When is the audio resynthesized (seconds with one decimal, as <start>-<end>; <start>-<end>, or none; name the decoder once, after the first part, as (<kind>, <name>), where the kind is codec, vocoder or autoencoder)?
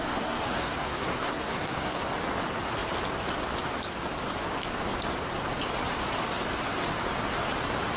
0.0-2.1 (codec, SNAC)